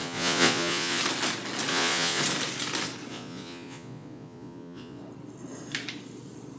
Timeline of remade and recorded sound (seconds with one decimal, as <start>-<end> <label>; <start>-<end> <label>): 0.0-1.0 remade; 1.0-1.7 recorded; 1.7-2.2 remade; 2.2-3.1 recorded; 3.1-5.0 remade; 5.0-6.6 recorded